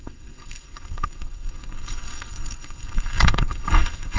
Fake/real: fake